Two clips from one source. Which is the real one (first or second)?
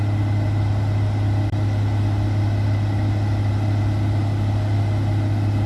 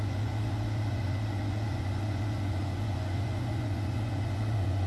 first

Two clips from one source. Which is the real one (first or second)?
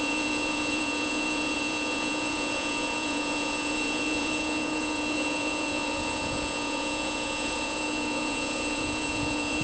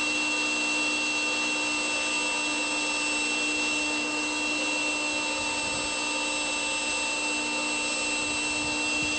second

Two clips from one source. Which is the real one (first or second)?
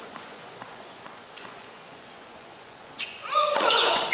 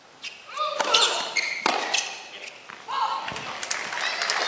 second